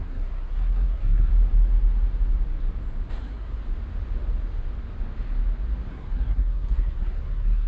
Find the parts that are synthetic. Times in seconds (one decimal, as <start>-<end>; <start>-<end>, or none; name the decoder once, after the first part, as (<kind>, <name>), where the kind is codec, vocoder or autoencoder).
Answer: 0.0-1.3 (codec, SNAC); 3.1-3.6; 5.9-7.7